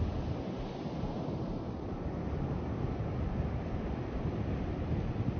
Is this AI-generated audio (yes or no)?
no